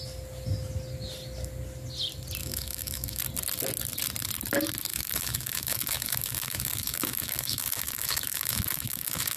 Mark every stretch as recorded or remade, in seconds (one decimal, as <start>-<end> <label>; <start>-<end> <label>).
0.0-2.4 recorded; 2.4-3.2 remade; 3.2-4.9 recorded; 4.9-9.4 remade